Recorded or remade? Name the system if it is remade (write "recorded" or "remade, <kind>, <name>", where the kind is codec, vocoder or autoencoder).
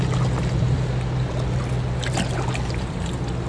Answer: recorded